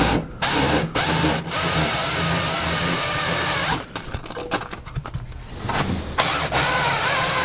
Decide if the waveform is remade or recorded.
recorded